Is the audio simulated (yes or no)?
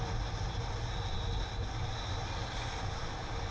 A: no